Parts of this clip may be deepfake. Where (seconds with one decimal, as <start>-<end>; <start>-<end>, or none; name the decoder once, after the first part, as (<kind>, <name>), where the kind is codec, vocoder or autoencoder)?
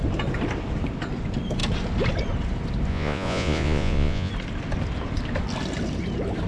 2.9-4.3 (vocoder, Vocos)